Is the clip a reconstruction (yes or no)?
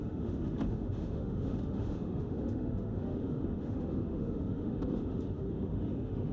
yes